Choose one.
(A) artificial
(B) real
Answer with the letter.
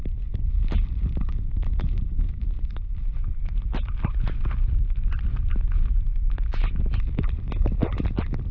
B